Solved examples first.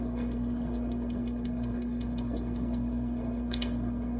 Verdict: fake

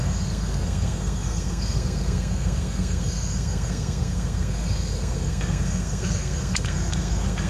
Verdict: fake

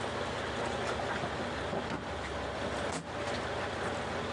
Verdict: real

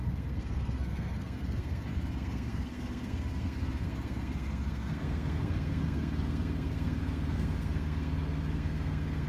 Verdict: fake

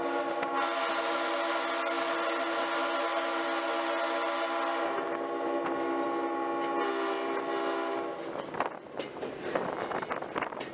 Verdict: real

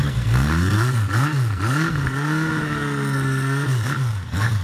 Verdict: fake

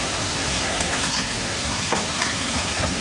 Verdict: fake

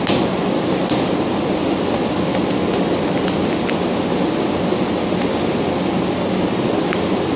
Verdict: real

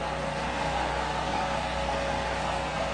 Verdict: fake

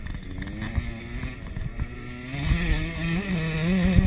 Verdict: real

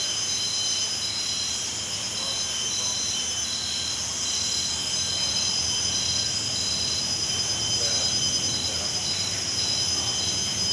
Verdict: real